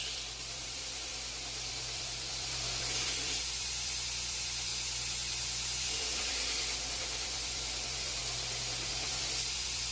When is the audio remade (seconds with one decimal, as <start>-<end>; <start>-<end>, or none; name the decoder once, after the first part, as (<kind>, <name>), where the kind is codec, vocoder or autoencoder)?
0.0-1.1 (vocoder, BigVGAN v2); 1.7-4.7; 5.8-8.2; 8.9-9.9